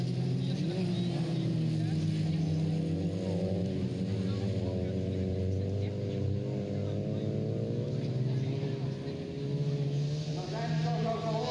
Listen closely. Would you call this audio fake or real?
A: real